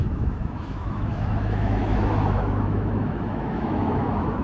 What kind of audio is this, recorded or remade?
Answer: remade